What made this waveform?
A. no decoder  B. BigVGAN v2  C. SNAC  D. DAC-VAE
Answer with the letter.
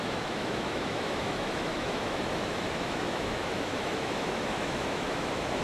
D